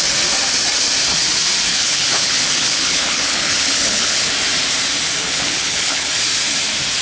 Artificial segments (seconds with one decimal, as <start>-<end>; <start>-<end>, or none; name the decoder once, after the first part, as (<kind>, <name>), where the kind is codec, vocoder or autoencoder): 1.7-4.3 (codec, HILCodec); 5.2-6.1